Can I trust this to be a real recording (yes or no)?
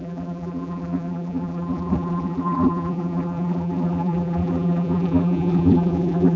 no